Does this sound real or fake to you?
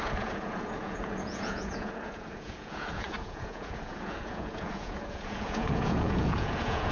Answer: fake